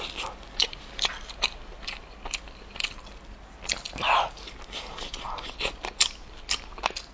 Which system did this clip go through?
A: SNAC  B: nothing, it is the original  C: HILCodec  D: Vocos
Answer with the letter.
B